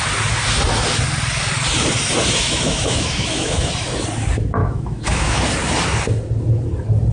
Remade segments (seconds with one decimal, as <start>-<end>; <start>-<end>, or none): 2.4-3.7; 4.6-5.4